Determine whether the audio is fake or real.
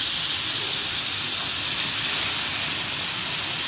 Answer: real